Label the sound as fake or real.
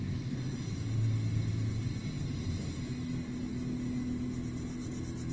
real